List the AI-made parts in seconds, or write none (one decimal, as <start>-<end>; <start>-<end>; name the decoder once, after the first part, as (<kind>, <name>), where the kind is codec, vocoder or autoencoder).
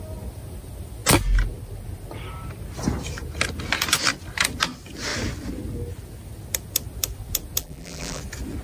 7.6-8.2 (vocoder, BigVGAN v2)